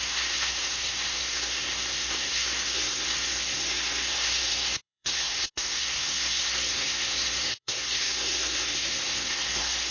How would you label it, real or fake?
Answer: fake